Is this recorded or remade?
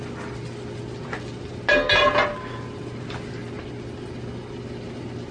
recorded